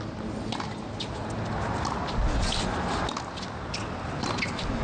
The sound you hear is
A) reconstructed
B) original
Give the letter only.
B